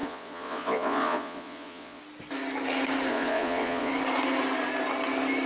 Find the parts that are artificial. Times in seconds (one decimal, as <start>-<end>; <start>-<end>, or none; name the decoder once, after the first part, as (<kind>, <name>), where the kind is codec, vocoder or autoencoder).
0.0-2.0 (vocoder, Vocos); 3.1-3.9